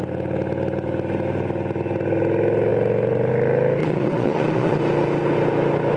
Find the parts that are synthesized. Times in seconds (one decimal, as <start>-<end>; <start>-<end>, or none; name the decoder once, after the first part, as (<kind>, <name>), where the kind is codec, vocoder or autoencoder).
3.8-4.8 (vocoder, Vocos)